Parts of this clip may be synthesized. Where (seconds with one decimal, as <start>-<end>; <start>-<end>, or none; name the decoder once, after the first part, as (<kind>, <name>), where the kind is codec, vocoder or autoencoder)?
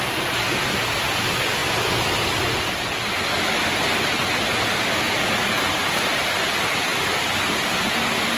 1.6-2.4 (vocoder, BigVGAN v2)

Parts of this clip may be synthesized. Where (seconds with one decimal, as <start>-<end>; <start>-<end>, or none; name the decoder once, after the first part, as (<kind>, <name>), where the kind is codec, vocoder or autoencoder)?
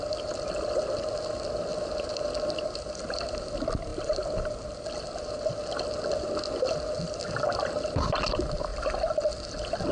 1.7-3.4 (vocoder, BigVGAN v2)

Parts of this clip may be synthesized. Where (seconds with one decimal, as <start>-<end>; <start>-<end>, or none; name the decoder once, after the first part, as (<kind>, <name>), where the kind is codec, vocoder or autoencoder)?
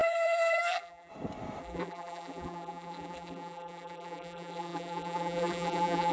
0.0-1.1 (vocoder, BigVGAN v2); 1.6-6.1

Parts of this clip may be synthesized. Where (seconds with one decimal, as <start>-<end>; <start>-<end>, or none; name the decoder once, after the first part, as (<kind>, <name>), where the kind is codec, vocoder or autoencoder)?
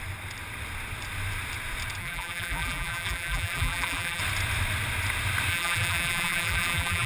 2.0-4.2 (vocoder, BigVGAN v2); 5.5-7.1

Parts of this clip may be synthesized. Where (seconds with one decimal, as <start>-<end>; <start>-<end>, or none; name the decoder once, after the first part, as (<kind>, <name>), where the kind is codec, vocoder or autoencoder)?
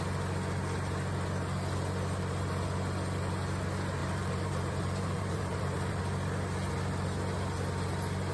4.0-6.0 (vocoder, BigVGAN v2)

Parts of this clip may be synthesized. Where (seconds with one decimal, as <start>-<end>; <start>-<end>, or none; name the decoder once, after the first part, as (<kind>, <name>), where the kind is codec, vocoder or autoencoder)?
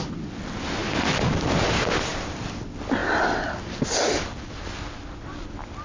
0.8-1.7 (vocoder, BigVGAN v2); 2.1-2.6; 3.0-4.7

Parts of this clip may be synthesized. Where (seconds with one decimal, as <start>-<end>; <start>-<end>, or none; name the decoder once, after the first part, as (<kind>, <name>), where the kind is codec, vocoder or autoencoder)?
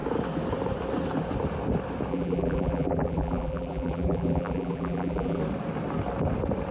2.1-5.4 (vocoder, BigVGAN v2)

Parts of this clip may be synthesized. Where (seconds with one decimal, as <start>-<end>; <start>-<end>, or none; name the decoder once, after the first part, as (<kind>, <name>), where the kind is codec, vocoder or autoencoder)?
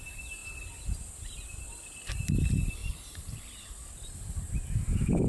2.8-4.4 (vocoder, BigVGAN v2)